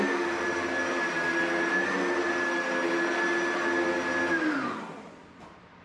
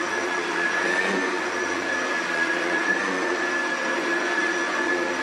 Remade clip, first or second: second